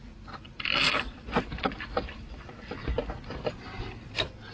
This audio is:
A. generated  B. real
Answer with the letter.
A